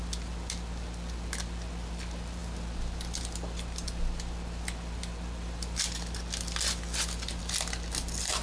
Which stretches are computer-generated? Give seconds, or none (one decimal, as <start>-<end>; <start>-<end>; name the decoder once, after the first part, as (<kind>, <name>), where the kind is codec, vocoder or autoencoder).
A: none